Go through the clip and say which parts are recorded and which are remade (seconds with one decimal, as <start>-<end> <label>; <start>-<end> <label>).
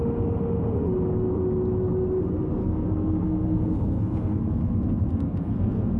0.0-2.6 recorded; 2.6-6.0 remade